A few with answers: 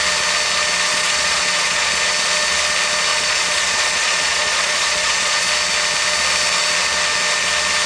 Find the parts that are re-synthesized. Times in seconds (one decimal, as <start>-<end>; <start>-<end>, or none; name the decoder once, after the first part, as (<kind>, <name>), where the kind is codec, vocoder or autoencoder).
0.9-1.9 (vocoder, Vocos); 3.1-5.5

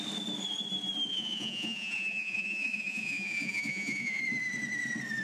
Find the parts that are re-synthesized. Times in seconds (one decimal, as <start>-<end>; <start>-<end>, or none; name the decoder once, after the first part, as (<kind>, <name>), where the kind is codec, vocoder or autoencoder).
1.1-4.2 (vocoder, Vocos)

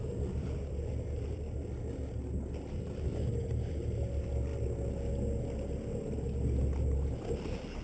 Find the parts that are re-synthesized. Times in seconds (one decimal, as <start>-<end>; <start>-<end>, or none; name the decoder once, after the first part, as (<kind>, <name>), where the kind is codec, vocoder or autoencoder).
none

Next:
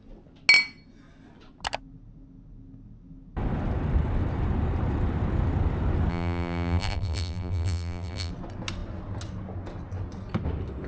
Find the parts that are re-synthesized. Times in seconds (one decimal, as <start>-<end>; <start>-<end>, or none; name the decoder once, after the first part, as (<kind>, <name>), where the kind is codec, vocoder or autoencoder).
6.1-8.3 (vocoder, BigVGAN v2)

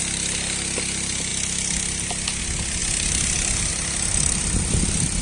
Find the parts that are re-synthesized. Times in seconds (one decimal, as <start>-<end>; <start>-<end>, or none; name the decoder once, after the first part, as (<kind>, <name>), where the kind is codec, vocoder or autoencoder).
none

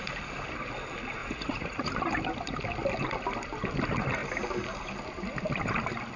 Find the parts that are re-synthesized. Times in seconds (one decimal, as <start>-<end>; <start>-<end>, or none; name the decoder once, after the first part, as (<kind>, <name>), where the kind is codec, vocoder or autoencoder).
1.2-1.9 (vocoder, Vocos)

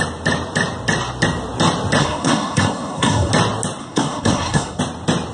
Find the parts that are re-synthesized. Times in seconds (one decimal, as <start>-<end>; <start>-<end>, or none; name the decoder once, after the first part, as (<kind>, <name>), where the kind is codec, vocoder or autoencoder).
2.0-3.3 (codec, SNAC); 3.8-4.8

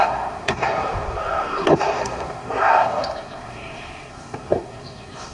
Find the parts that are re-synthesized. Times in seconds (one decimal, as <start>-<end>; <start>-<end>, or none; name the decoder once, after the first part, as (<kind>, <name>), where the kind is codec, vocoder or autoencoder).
0.0-5.3 (codec, SNAC)